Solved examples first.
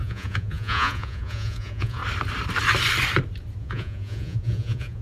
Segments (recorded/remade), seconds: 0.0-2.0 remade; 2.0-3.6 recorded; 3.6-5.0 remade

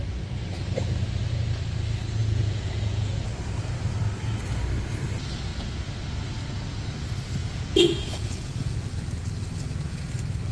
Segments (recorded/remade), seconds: 0.0-2.2 recorded; 2.2-3.2 remade; 3.2-7.4 recorded; 7.4-8.9 remade; 8.9-10.5 recorded

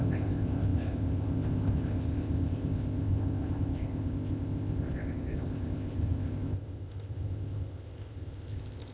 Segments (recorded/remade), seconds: 0.0-8.9 remade

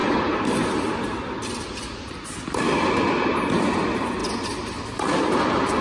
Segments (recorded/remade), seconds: 0.0-0.7 remade; 0.7-5.8 recorded

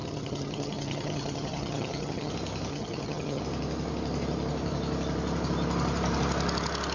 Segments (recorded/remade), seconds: 0.0-2.3 remade; 2.3-2.7 recorded; 2.7-3.4 remade; 3.4-6.9 recorded